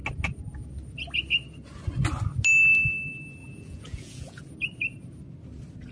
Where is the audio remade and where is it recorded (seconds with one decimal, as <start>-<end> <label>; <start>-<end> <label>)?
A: 0.0-3.4 recorded; 3.4-4.4 remade; 4.4-5.9 recorded